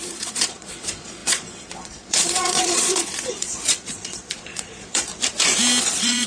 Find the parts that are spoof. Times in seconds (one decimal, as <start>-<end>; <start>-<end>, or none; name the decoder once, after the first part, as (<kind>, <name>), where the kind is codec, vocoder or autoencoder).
0.0-5.1 (vocoder, Vocos); 5.8-6.3